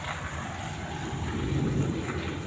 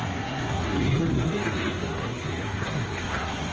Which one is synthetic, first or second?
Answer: second